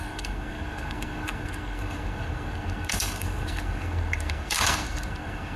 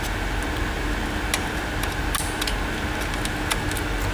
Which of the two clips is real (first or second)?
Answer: second